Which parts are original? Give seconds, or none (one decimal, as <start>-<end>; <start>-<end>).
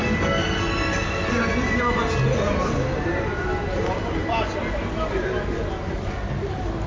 0.0-6.9